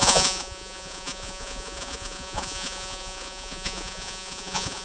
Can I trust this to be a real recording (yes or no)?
no